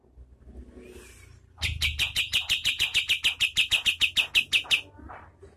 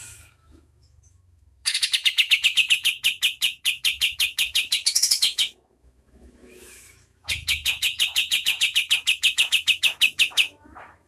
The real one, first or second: first